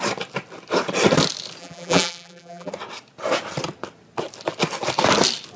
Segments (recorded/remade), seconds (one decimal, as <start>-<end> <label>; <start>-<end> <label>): 0.0-1.6 recorded; 1.6-2.7 remade; 2.7-5.6 recorded